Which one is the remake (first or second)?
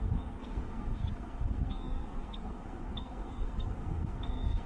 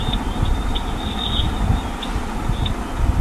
first